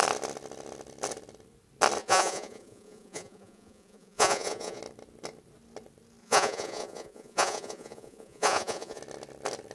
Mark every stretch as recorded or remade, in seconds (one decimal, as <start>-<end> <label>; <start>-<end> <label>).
0.0-2.0 recorded; 2.0-4.8 remade; 4.8-6.2 recorded; 6.2-9.0 remade; 9.0-9.7 recorded